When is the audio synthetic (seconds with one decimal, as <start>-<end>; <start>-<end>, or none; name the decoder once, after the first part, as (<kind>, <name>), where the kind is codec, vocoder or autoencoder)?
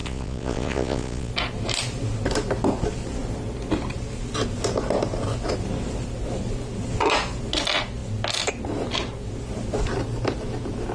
0.0-1.3 (vocoder, Vocos)